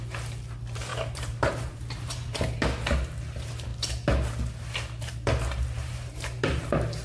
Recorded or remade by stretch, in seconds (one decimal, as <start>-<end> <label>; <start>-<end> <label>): 0.0-0.9 recorded; 0.9-2.3 remade; 2.3-5.8 recorded; 5.8-6.6 remade; 6.6-7.0 recorded